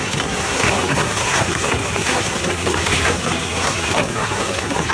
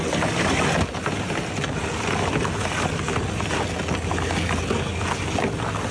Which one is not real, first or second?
first